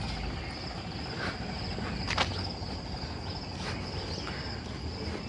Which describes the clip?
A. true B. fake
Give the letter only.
A